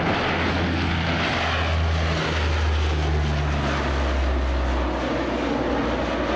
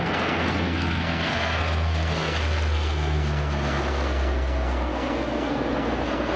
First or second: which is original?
first